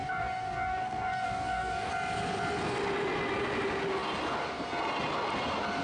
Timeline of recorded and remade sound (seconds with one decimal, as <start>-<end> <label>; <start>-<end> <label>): 0.0-1.9 remade; 1.9-5.8 recorded